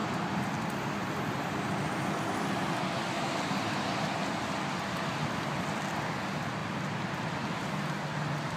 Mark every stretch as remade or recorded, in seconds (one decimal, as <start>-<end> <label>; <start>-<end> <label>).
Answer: 0.0-8.6 recorded